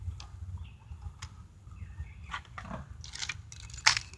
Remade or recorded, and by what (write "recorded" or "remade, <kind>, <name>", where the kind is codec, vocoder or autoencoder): recorded